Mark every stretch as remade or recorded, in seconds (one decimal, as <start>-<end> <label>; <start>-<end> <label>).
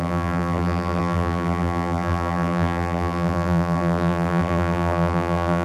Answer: 0.0-5.6 remade